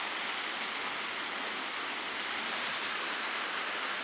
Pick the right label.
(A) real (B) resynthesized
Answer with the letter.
A